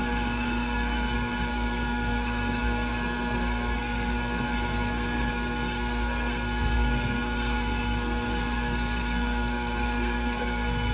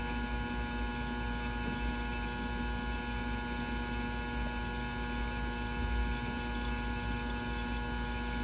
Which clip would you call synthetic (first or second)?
first